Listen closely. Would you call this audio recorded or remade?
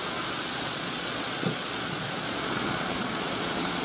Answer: remade